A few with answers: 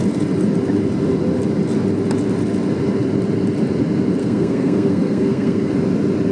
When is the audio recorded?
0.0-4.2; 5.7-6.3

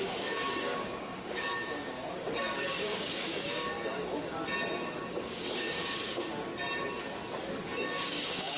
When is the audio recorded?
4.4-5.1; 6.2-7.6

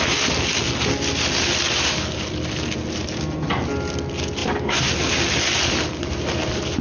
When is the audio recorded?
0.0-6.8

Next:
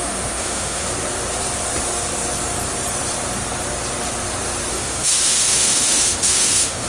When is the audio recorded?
0.8-4.7